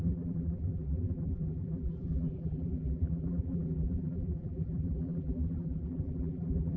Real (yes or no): no